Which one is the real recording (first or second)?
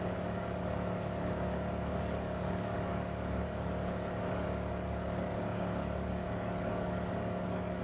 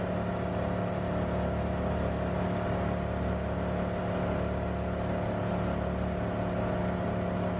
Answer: second